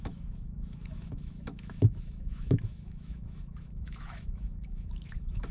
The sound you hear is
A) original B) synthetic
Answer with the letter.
B